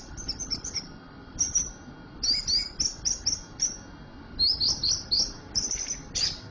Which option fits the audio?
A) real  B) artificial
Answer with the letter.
A